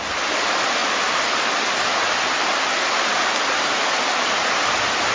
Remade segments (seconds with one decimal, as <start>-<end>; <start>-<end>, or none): none